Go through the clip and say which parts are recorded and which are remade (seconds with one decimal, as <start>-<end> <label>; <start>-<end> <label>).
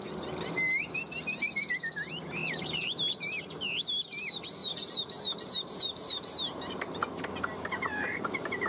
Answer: 0.0-2.4 recorded; 2.4-3.4 remade; 3.4-4.6 recorded; 4.6-8.7 remade